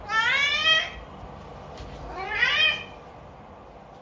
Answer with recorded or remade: recorded